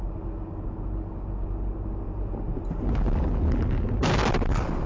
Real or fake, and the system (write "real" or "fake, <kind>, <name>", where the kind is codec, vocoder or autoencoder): real